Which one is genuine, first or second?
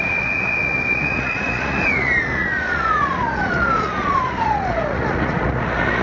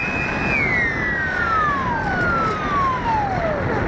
second